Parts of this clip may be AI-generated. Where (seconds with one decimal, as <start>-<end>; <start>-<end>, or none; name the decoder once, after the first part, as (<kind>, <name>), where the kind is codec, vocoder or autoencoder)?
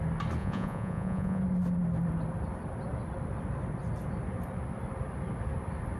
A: 0.4-1.4 (vocoder, Vocos)